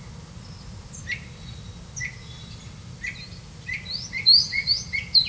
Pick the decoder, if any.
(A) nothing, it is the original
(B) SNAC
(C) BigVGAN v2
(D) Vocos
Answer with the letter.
A